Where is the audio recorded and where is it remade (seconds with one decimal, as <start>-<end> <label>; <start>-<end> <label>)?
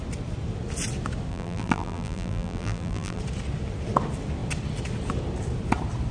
0.0-1.3 recorded; 1.3-3.2 remade; 3.2-6.1 recorded